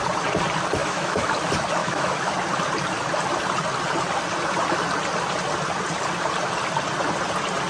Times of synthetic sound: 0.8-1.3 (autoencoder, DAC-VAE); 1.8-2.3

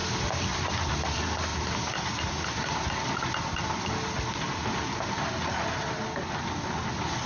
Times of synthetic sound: 1.5-2.6 (vocoder, BigVGAN v2)